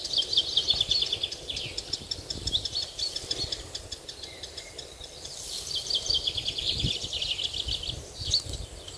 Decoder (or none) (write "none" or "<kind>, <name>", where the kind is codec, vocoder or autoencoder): none